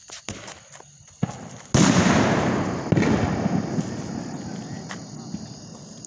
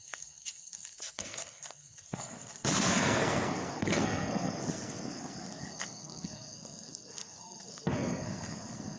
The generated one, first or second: second